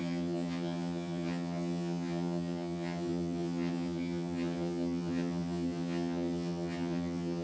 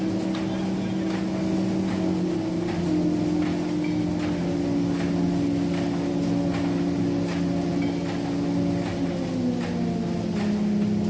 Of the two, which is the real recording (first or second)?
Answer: second